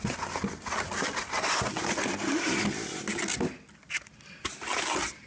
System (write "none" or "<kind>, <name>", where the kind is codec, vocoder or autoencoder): none